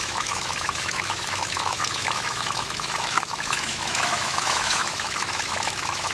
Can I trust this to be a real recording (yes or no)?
no